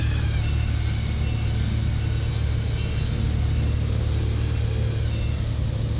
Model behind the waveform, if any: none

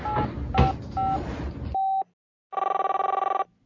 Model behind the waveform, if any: none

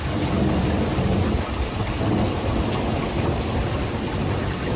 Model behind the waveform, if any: none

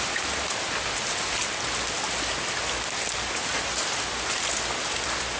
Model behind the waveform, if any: none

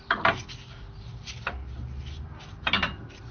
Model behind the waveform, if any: none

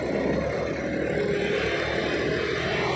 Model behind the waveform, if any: none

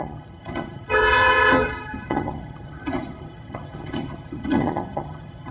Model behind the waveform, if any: vocoder, HiFi-GAN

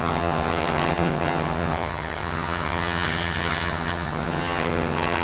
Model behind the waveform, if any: vocoder, HiFi-GAN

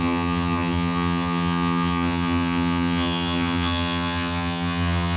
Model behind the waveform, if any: vocoder, HiFi-GAN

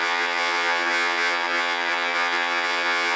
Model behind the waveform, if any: vocoder, HiFi-GAN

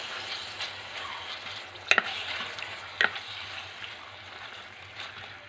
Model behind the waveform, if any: none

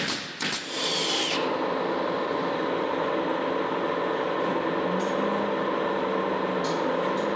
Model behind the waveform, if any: none